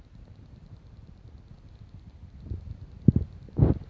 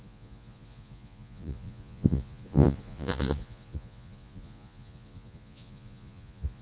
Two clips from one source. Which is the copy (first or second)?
second